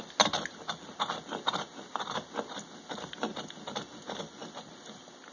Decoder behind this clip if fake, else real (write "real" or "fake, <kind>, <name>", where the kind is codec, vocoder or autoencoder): real